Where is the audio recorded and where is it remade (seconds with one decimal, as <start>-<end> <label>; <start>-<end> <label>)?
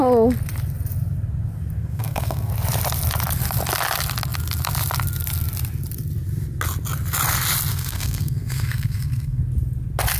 0.0-1.8 recorded; 1.8-2.5 remade; 2.5-7.7 recorded; 7.7-9.4 remade; 9.4-10.2 recorded